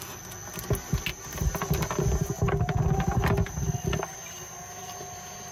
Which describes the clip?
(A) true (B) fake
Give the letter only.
A